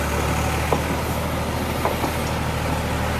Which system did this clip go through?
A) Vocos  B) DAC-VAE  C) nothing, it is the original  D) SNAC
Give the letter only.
C